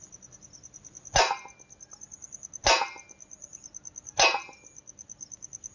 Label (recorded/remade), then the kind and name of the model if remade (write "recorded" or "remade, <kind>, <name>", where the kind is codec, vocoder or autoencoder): recorded